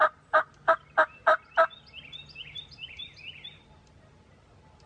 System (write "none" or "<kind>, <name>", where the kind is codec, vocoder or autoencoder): none